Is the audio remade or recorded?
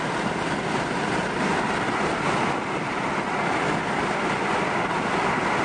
remade